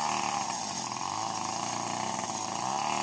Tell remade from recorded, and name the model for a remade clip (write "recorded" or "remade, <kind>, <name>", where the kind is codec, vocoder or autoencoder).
recorded